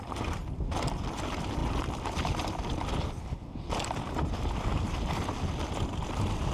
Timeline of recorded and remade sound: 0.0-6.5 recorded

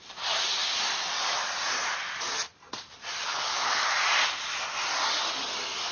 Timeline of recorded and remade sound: 0.0-3.2 recorded; 3.2-3.9 remade; 3.9-5.9 recorded